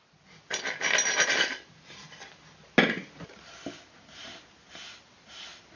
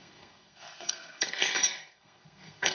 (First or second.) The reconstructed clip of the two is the second